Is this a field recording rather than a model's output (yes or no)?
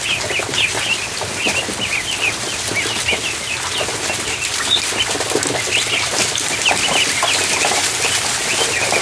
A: yes